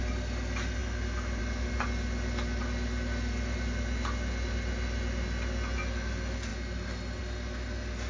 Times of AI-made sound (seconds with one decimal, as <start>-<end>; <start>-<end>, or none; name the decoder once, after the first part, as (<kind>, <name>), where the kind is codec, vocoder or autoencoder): none